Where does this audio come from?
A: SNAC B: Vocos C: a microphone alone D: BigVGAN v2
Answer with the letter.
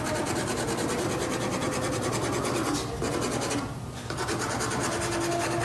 C